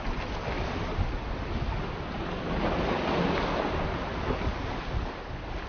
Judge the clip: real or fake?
real